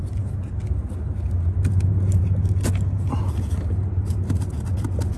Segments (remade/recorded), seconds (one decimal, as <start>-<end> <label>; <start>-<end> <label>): 0.0-5.2 recorded